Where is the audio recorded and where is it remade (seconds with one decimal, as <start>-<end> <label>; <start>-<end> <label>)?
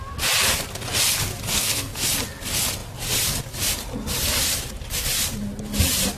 0.0-1.5 recorded; 1.5-2.0 remade; 2.0-6.2 recorded